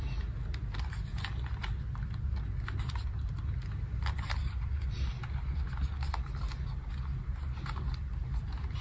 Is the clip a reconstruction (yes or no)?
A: no